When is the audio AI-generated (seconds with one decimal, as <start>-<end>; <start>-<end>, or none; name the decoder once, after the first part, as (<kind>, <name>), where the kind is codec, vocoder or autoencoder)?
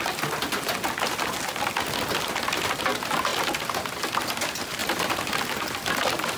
none